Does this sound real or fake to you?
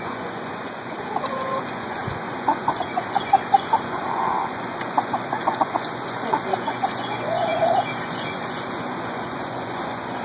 fake